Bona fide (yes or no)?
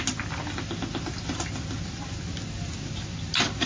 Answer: yes